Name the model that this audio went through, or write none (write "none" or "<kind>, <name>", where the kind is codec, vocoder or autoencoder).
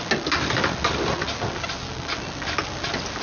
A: none